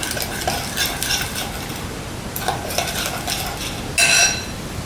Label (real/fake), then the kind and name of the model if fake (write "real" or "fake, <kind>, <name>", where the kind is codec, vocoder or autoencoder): real